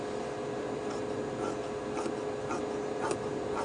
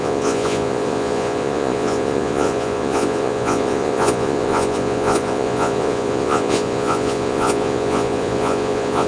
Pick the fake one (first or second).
second